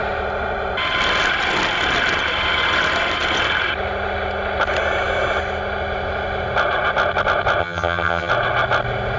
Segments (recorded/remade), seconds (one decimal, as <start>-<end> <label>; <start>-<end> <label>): 0.0-7.6 recorded; 7.6-8.3 remade; 8.3-9.2 recorded